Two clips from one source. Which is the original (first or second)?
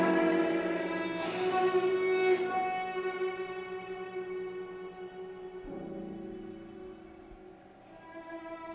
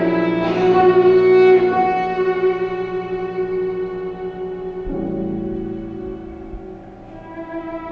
second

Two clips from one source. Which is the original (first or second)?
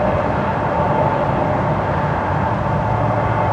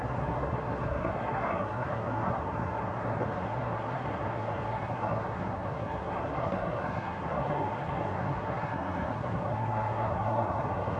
first